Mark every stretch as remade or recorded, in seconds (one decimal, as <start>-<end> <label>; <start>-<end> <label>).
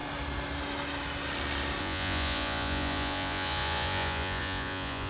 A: 0.0-1.8 recorded; 1.8-5.1 remade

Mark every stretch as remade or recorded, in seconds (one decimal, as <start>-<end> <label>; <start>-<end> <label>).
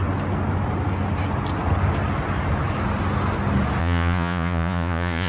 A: 0.0-3.8 recorded; 3.8-5.3 remade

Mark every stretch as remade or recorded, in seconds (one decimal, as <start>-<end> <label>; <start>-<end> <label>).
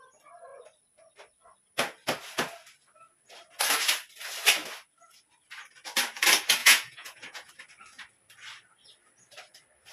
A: 0.0-6.6 recorded; 6.6-7.5 remade; 7.5-9.9 recorded